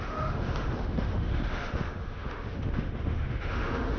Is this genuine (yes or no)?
no